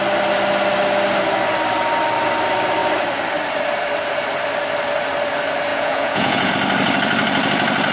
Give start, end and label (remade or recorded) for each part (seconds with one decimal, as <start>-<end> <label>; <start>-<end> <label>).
0.0-5.7 recorded; 5.7-6.5 remade; 6.5-7.9 recorded